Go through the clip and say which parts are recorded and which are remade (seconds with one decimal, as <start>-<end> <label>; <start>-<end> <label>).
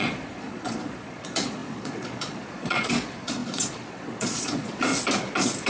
0.0-4.9 remade; 4.9-5.7 recorded